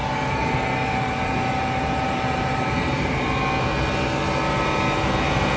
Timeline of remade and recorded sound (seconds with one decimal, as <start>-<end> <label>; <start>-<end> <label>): 0.0-3.4 remade; 3.4-5.6 recorded